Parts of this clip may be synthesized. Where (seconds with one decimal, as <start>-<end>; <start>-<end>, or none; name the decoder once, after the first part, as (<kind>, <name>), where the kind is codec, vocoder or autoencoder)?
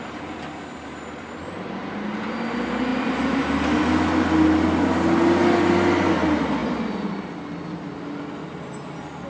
none